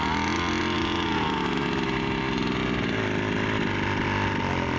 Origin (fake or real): real